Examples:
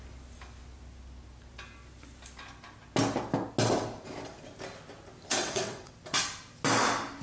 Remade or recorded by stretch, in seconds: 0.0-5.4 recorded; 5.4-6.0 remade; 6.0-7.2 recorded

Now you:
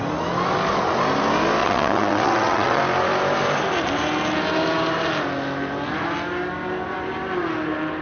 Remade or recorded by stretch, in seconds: 0.0-1.6 recorded; 1.6-2.8 remade; 2.8-8.0 recorded

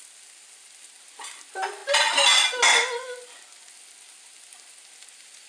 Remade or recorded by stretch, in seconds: 0.0-5.5 recorded

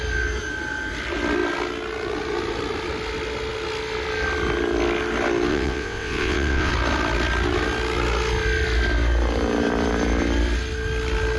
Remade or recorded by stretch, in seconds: 0.0-5.5 recorded; 5.5-6.7 remade; 6.7-11.4 recorded

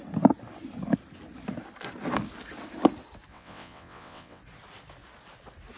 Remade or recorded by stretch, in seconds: 0.0-3.3 recorded; 3.3-4.4 remade; 4.4-5.8 recorded